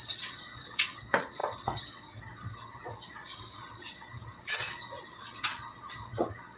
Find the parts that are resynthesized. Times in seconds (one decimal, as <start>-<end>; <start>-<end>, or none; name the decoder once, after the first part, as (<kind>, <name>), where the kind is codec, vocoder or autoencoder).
0.0-6.6 (vocoder, WaveNeXt)